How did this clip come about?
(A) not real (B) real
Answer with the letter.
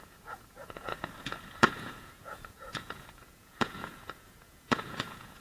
A